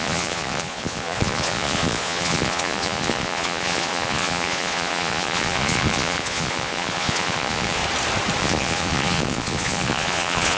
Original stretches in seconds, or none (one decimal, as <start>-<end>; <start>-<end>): 7.8-8.4